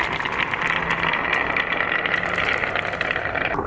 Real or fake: real